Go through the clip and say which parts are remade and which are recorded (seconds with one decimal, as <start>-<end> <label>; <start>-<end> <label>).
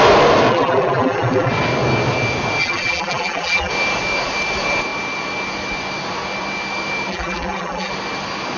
0.0-0.5 recorded; 0.5-1.5 remade; 1.5-2.6 recorded; 2.6-3.7 remade; 3.7-7.1 recorded; 7.1-7.9 remade; 7.9-8.6 recorded